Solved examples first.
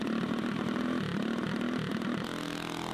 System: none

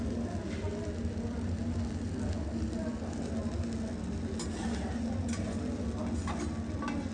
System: none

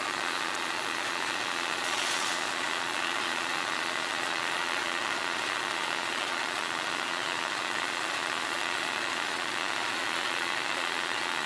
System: vocoder, Vocos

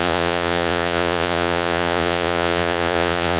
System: vocoder, Vocos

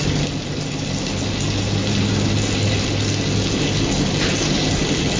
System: none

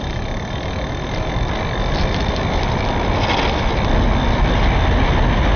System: none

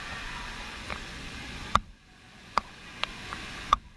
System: vocoder, Vocos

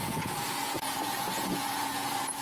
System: vocoder, Vocos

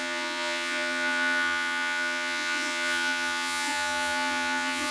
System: vocoder, Vocos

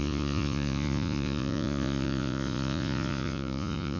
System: vocoder, Vocos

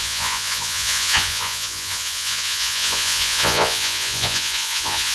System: vocoder, Vocos